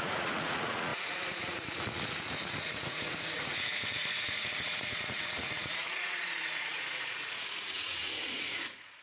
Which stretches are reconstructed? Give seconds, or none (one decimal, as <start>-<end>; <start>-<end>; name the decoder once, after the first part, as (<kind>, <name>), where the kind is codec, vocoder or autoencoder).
0.0-9.0 (vocoder, Vocos)